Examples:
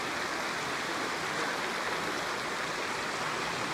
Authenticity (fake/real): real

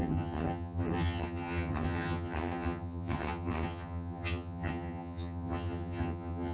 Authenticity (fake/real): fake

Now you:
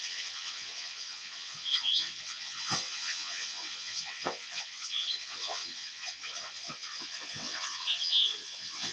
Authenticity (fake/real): fake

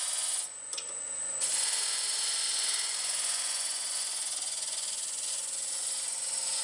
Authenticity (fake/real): fake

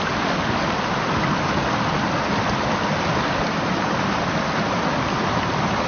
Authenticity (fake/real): real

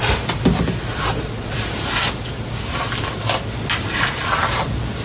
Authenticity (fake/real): real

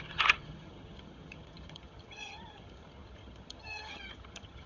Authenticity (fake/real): fake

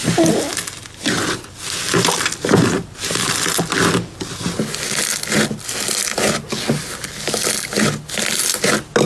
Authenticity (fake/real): real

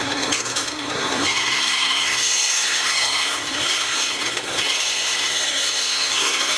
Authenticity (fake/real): fake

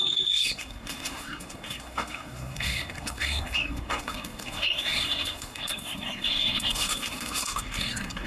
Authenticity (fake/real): fake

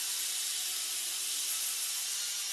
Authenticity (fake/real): real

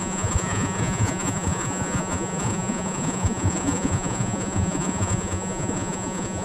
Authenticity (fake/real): fake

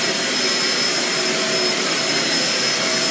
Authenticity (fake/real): real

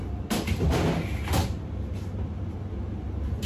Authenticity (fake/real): real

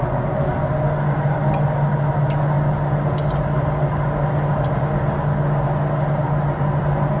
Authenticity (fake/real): real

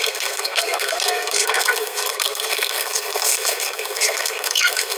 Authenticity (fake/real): fake